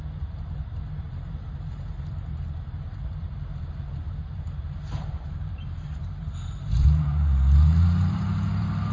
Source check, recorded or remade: remade